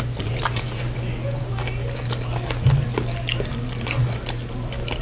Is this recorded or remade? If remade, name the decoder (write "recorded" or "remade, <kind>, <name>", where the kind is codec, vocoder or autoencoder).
recorded